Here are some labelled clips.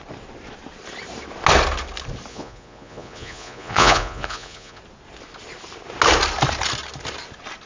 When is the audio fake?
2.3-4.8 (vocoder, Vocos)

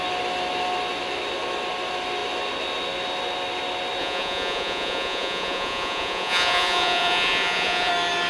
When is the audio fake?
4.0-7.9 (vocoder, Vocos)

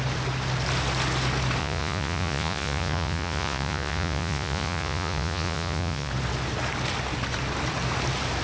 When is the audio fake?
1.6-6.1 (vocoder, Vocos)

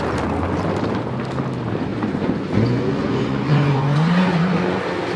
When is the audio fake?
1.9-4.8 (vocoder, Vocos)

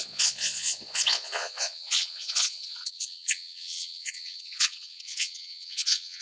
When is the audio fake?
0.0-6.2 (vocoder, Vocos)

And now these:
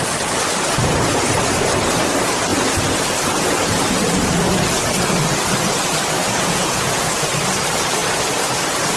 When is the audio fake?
6.2-7.1 (vocoder, Vocos)